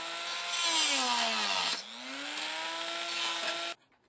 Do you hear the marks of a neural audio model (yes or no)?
no